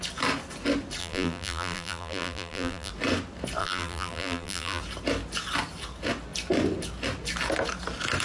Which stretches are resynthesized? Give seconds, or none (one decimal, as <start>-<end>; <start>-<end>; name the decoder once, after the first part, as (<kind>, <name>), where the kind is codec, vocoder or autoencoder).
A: 1.0-2.9 (vocoder, BigVGAN v2); 3.6-4.8